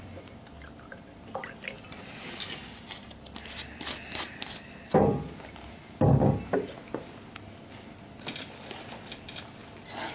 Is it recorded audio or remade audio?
recorded